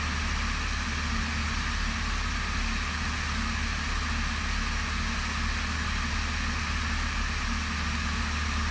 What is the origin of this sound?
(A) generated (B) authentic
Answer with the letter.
B